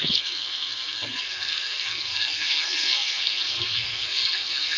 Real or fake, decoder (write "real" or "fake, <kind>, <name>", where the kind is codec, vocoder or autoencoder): fake, codec, SNAC